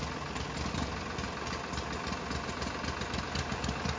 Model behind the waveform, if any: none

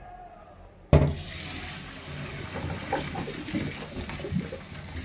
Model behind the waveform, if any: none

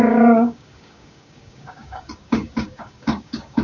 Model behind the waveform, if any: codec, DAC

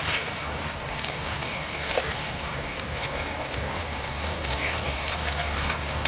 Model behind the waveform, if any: codec, DAC